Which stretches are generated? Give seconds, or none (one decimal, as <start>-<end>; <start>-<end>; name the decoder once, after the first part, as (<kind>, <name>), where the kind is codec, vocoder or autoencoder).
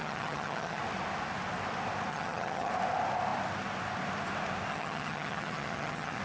0.0-0.8 (vocoder, HiFi-GAN); 2.1-2.7; 4.7-6.2